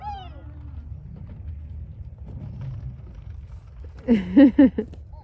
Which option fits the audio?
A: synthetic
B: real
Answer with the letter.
B